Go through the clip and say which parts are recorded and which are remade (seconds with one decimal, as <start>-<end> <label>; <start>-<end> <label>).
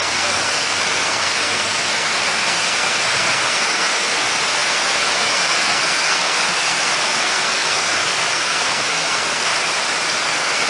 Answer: 0.0-9.5 remade; 9.5-10.2 recorded; 10.2-10.7 remade